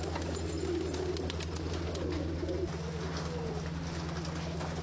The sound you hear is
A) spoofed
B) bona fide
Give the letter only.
B